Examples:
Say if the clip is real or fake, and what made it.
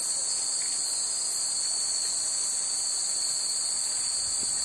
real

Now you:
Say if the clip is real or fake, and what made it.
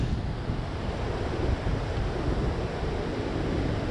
real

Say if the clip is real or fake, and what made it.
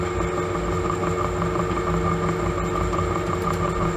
real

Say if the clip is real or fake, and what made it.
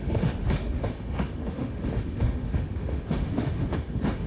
fake, autoencoder, DAC-VAE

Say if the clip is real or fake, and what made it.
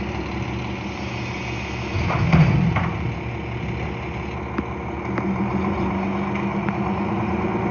real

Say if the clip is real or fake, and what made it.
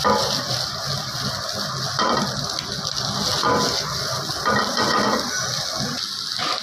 real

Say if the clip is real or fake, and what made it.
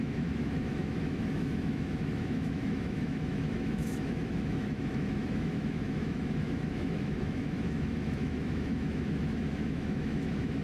fake, autoencoder, DAC-VAE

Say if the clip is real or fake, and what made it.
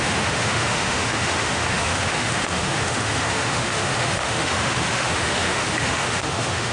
fake, autoencoder, DAC-VAE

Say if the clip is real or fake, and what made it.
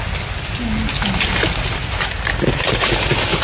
real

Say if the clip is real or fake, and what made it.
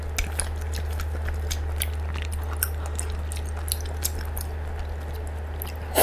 real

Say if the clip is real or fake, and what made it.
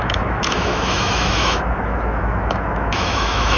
fake, autoencoder, DAC-VAE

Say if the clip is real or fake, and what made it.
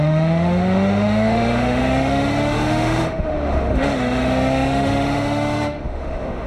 fake, autoencoder, DAC-VAE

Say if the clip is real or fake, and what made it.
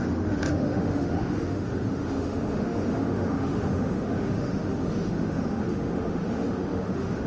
fake, autoencoder, DAC-VAE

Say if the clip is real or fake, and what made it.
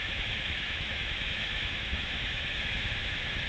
fake, autoencoder, DAC-VAE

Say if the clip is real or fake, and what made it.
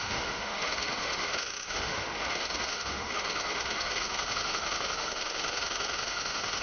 fake, autoencoder, DAC-VAE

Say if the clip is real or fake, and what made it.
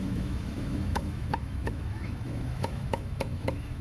fake, autoencoder, DAC-VAE